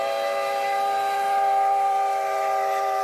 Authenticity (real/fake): real